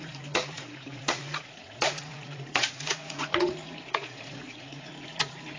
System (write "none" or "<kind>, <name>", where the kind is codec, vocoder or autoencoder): vocoder, Vocos